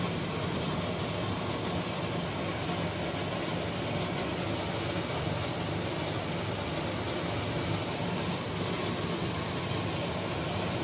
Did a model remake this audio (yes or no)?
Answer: no